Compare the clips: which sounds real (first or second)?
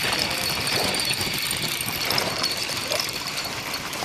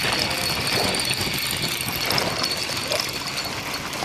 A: second